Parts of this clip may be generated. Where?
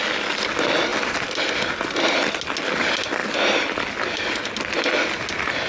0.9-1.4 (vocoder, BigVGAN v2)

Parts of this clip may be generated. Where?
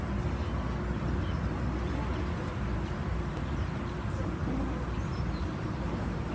3.1-6.3 (vocoder, BigVGAN v2)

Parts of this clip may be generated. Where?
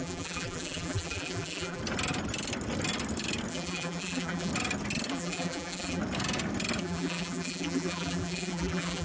0.0-1.8 (vocoder, BigVGAN v2); 3.5-4.5; 5.1-6.0; 6.8-9.0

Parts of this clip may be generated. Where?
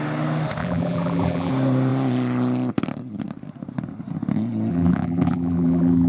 0.6-1.5 (vocoder, BigVGAN v2); 4.7-6.1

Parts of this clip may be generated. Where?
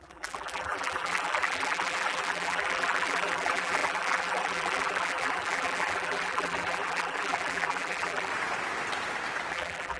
0.0-8.3 (vocoder, BigVGAN v2); 9.5-10.0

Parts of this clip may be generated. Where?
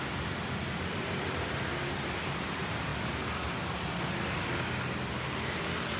0.0-2.9 (vocoder, BigVGAN v2); 5.2-6.0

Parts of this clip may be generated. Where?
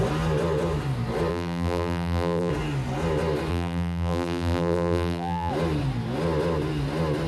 1.3-2.5 (vocoder, BigVGAN v2); 3.5-5.5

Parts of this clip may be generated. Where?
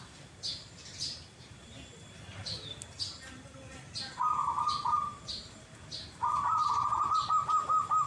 0.0-2.4 (vocoder, BigVGAN v2); 4.5-8.1